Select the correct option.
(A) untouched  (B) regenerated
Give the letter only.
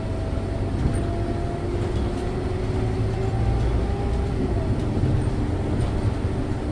A